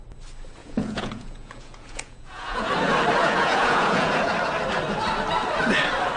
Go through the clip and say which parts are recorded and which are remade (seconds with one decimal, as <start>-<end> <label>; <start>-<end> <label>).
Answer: 0.0-0.6 recorded; 0.6-2.7 remade; 2.7-3.2 recorded; 3.2-4.1 remade; 4.1-6.2 recorded